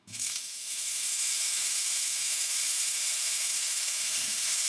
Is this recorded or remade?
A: remade